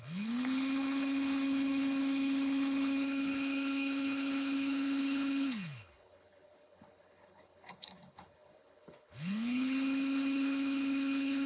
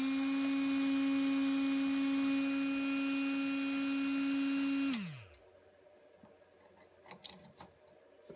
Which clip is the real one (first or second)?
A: second